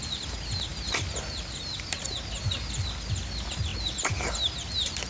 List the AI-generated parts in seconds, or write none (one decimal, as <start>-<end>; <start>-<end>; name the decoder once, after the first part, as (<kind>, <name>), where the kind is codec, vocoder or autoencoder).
none